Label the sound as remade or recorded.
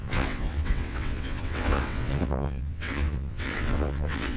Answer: remade